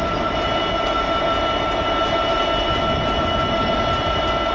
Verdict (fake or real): real